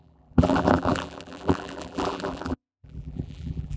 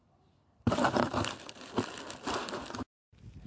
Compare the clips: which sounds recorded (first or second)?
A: second